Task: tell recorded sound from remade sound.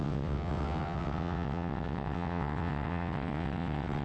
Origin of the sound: remade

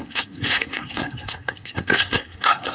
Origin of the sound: remade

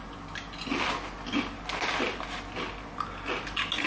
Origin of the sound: recorded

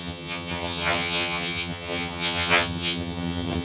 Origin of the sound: remade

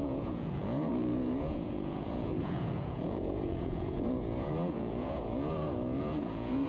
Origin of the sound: remade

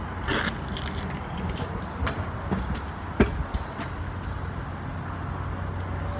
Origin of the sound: recorded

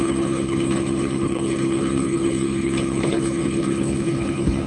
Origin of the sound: remade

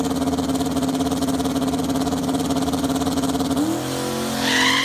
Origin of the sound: recorded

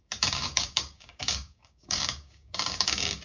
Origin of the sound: remade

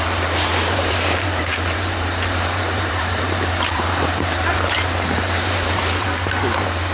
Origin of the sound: remade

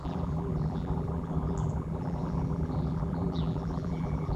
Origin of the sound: remade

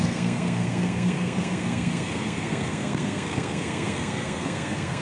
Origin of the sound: remade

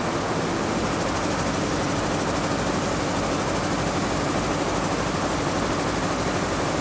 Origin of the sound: recorded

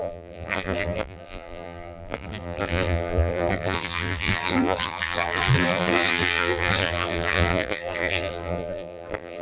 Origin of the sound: remade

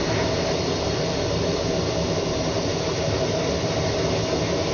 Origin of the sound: recorded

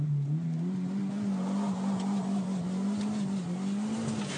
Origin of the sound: recorded